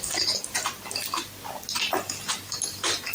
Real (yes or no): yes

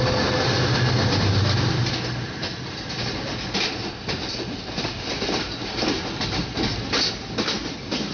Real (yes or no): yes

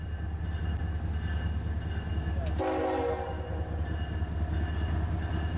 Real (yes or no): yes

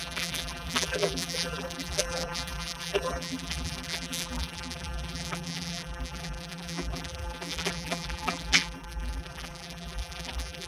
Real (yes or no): no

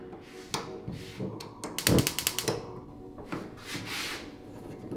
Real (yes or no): yes